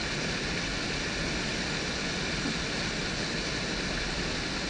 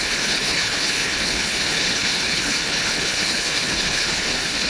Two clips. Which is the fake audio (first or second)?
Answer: second